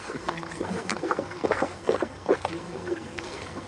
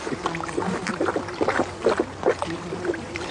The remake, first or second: first